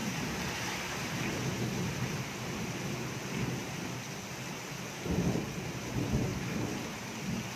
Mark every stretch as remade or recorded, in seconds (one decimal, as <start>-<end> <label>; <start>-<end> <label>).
0.0-2.4 remade; 2.4-7.6 recorded